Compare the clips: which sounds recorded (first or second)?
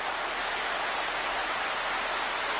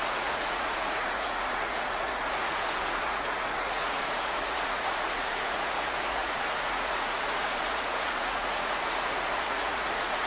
first